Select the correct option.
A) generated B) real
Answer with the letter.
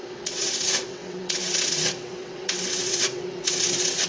A